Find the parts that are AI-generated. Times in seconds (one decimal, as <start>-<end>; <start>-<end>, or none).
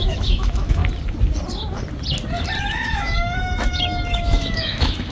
0.0-0.8; 2.6-5.1